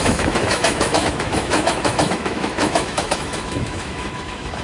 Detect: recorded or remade remade